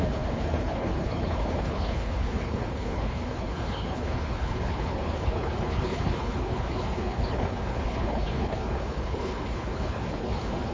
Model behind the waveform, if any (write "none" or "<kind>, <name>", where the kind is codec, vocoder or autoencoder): codec, HILCodec